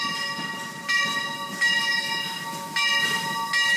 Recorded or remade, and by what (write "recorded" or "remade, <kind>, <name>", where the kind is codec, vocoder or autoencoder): recorded